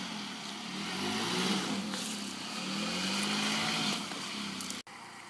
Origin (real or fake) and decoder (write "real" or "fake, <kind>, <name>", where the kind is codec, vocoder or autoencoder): real